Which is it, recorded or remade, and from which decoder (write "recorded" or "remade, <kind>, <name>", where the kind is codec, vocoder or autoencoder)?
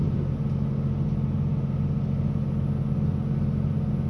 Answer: recorded